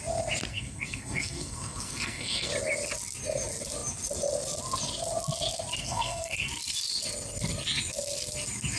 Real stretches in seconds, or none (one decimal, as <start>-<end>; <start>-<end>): 0.0-0.5; 2.5-5.8; 6.5-8.8